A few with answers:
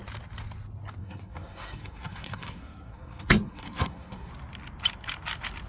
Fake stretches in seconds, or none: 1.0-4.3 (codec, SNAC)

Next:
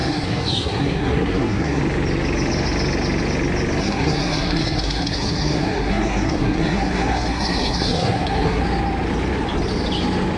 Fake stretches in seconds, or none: 0.0-1.8 (codec, SNAC); 3.8-8.6

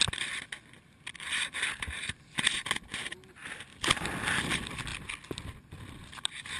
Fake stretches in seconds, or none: none

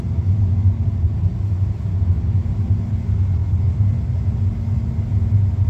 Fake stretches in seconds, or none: none

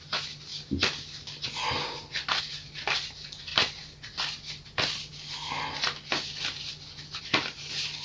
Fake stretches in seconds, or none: none

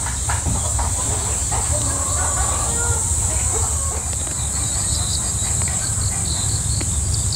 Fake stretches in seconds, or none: 0.7-2.1 (vocoder, BigVGAN v2); 5.4-5.9